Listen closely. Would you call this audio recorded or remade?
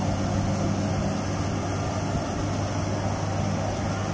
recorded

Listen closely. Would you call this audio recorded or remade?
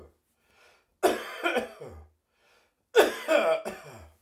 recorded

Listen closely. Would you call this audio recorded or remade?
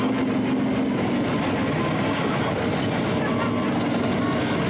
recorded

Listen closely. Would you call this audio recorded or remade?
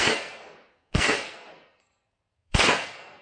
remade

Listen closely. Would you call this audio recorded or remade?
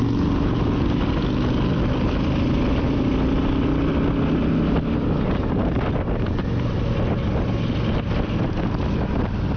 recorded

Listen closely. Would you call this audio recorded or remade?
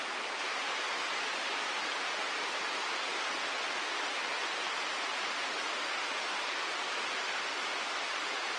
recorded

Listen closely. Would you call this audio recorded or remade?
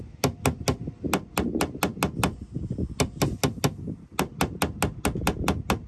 recorded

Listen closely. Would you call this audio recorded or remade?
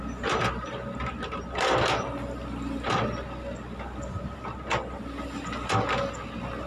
recorded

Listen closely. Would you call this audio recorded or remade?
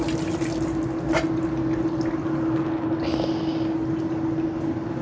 recorded